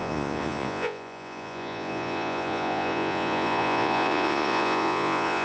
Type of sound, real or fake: fake